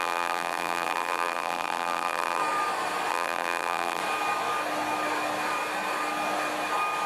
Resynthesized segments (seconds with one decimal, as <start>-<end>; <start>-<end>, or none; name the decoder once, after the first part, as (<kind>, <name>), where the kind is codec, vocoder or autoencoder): 0.0-2.4 (vocoder, BigVGAN v2); 3.1-4.0